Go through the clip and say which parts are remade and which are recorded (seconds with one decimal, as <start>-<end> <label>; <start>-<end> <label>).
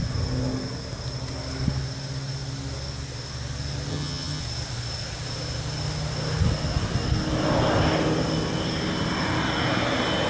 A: 0.0-3.9 recorded; 3.9-4.4 remade; 4.4-10.3 recorded